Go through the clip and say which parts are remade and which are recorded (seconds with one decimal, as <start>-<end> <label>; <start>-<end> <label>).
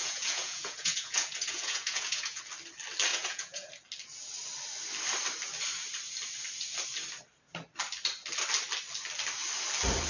0.0-2.4 remade; 2.4-3.1 recorded; 3.1-3.7 remade; 3.7-10.1 recorded